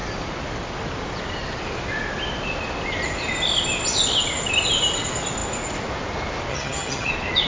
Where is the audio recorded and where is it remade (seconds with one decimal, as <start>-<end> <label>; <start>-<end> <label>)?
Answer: 0.0-6.5 recorded; 6.5-7.1 remade; 7.1-7.5 recorded